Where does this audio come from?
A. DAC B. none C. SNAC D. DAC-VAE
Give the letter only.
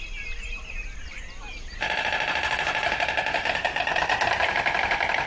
B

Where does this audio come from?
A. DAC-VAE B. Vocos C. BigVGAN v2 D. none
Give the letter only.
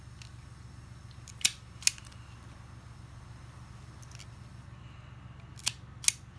D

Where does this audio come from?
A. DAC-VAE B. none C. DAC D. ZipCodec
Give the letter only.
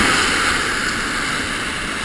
B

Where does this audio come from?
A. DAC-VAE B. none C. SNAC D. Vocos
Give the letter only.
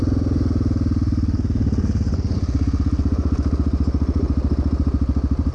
B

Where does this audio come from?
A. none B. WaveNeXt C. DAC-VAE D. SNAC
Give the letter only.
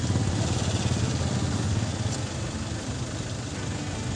A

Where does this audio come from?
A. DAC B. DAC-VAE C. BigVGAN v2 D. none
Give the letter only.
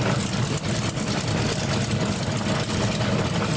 D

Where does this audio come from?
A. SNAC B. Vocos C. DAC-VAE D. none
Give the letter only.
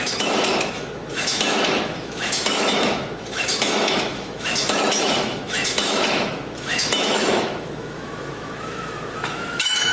C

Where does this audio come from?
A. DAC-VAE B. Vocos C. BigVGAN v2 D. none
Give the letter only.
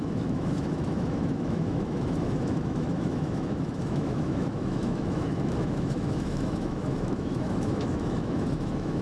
A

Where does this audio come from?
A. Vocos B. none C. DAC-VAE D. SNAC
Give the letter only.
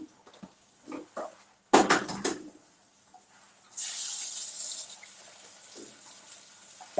B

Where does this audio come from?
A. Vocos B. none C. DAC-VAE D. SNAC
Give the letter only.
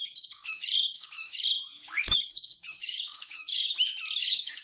C